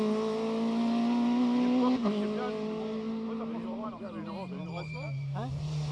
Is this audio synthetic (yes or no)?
no